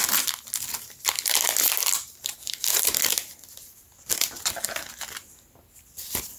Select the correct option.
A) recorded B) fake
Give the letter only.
A